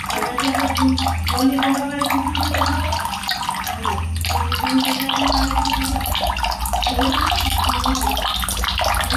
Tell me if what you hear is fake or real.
real